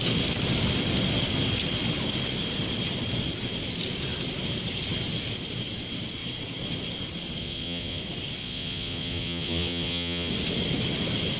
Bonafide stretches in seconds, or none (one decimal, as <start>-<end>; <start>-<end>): 0.0-7.4; 8.0-8.4; 10.3-11.4